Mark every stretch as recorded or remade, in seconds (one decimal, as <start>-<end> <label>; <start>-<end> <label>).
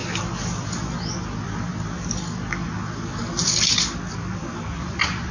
0.0-5.3 recorded